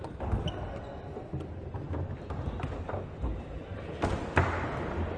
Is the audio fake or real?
real